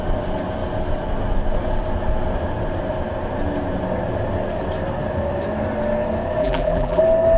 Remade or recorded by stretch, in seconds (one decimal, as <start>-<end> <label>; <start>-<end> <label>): 0.0-6.4 recorded; 6.4-7.0 remade; 7.0-7.4 recorded